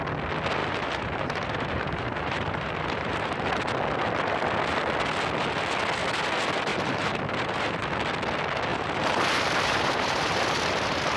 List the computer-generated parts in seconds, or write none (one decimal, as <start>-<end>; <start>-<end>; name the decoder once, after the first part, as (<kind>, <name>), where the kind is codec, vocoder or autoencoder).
0.6-3.5 (vocoder, BigVGAN v2); 6.7-7.9; 8.7-11.2